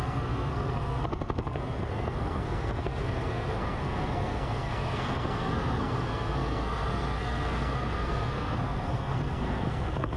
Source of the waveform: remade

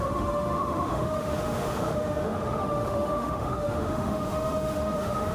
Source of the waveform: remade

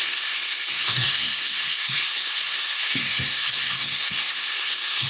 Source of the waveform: remade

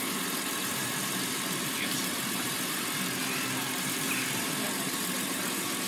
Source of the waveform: remade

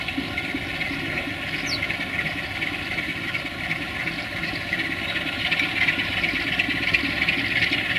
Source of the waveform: recorded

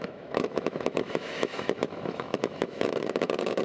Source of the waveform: remade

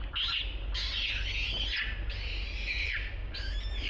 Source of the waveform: recorded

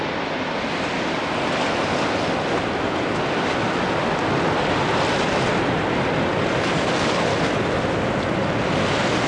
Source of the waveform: recorded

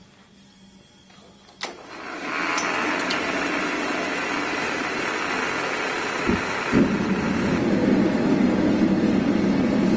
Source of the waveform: recorded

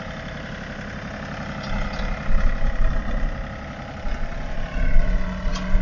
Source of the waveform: recorded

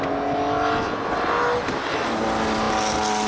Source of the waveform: recorded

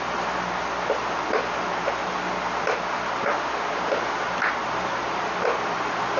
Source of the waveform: recorded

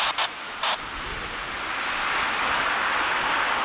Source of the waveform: recorded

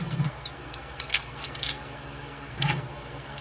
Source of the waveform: remade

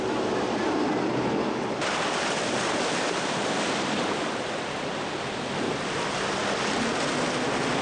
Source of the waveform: recorded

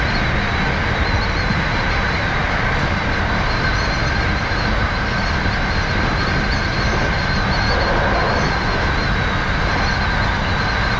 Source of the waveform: recorded